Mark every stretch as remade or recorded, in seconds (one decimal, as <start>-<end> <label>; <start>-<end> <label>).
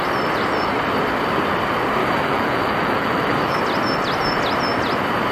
0.0-2.0 recorded; 2.0-3.6 remade; 3.6-5.3 recorded